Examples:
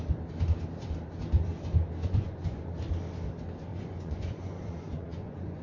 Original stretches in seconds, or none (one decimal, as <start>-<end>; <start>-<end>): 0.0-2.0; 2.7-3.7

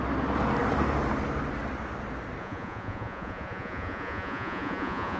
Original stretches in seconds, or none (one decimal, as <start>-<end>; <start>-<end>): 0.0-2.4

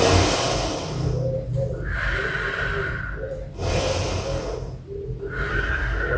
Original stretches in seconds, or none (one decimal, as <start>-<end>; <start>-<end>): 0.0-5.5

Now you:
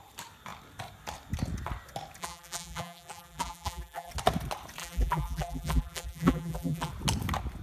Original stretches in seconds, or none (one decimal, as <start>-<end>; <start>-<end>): 0.0-2.2; 4.1-4.8; 6.9-7.6